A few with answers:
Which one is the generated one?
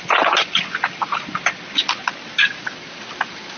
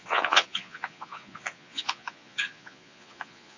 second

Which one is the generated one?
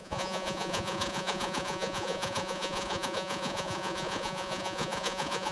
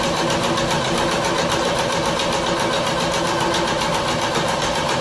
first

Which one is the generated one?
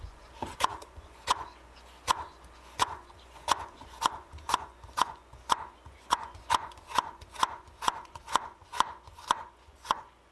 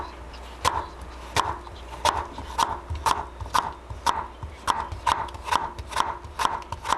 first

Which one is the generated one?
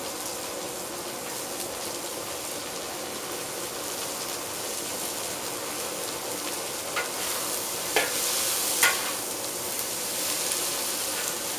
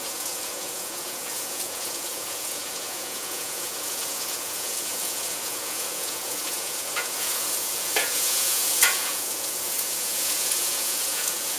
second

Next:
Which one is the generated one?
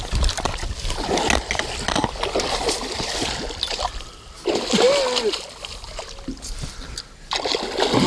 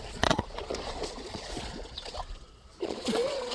second